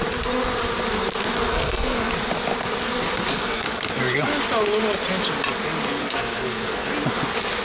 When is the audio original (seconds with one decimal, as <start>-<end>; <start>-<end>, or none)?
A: 0.0-1.5; 2.1-3.3; 4.0-6.0; 6.9-7.6